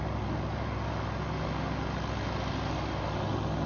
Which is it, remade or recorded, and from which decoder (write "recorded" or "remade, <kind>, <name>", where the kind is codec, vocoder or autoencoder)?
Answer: recorded